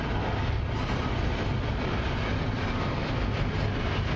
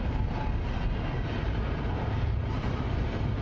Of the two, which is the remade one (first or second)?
second